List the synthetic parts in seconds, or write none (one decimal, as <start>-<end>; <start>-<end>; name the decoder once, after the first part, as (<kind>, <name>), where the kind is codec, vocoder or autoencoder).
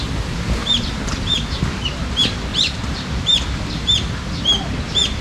2.5-4.1 (vocoder, BigVGAN v2)